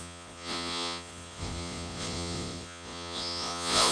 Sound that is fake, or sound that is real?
fake